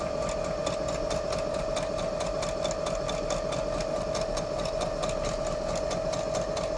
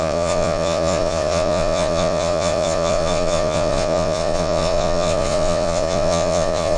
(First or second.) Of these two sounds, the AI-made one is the second